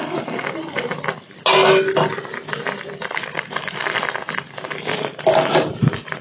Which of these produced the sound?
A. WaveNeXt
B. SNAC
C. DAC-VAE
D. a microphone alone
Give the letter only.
D